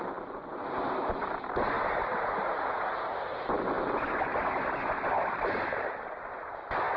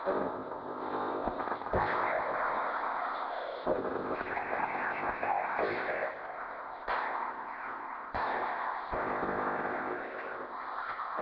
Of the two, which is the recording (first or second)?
first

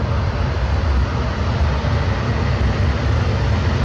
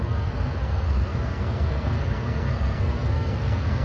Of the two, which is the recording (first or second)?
first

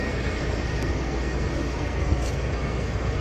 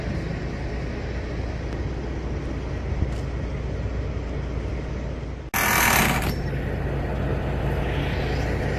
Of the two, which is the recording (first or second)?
second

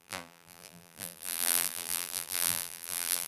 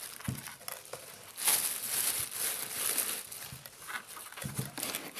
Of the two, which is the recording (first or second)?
second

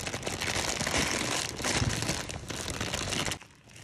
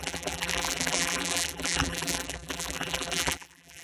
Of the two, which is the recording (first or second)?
first